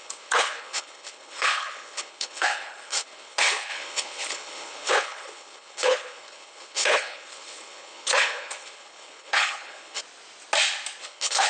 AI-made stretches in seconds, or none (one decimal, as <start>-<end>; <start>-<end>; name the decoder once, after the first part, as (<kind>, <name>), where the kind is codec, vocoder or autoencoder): 0.0-10.0 (codec, HILCodec); 11.0-11.5